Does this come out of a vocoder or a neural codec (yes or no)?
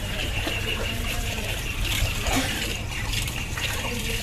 yes